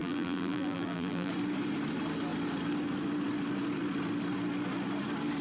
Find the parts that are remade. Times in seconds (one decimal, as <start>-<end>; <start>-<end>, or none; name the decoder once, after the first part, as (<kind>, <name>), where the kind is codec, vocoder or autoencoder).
0.0-1.3 (vocoder, BigVGAN v2)